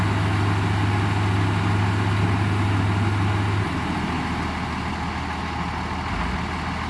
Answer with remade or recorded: recorded